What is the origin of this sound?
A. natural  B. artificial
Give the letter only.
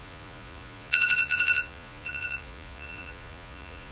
B